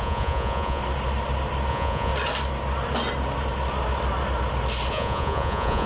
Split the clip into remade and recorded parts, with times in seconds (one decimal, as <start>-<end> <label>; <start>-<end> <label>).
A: 0.0-0.8 remade; 0.8-1.7 recorded; 1.7-2.1 remade; 2.1-4.9 recorded; 4.9-5.9 remade